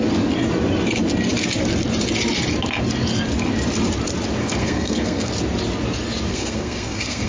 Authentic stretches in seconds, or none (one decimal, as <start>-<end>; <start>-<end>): 0.0-4.4; 5.3-6.3